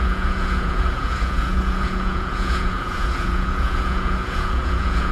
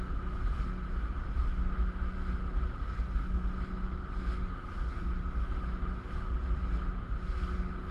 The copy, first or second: first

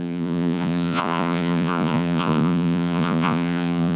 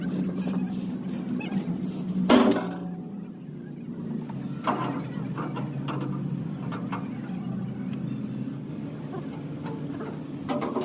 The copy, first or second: first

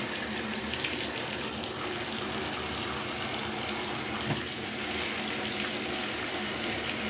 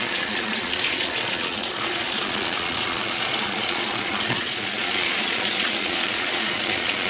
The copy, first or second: second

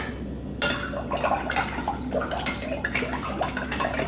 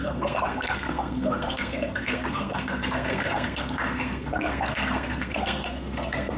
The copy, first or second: second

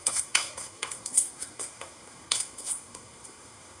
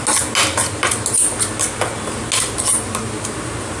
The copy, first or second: first